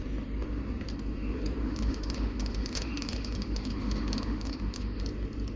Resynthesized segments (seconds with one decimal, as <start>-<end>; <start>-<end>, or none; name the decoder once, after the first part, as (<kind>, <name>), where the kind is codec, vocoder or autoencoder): 1.6-5.0 (autoencoder, DAC-VAE)